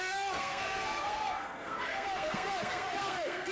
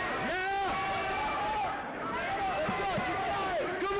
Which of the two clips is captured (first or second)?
second